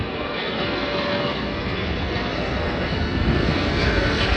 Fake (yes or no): yes